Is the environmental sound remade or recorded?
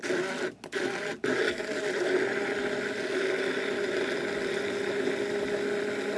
recorded